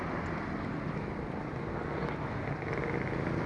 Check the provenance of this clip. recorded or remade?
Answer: recorded